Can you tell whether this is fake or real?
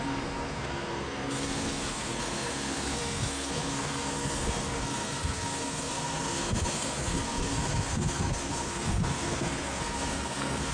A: fake